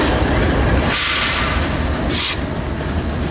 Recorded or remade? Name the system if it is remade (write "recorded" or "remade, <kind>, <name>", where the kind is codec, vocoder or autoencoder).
recorded